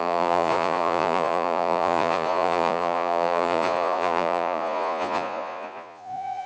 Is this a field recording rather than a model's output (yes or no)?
no